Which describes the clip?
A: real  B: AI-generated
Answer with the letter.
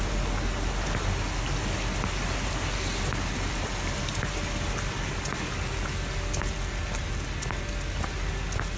A